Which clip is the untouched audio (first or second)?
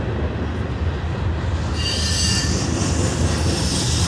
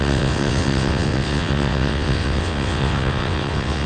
first